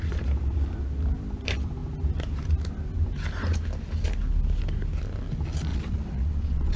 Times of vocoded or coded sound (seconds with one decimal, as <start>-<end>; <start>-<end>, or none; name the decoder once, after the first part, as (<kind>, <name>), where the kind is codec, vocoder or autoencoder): 5.7-6.8 (vocoder, WaveNeXt)